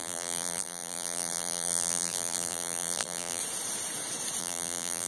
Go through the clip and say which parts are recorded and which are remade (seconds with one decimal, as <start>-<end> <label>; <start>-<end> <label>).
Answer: 0.0-3.4 remade; 3.4-4.4 recorded; 4.4-5.1 remade